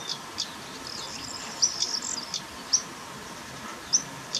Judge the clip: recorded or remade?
recorded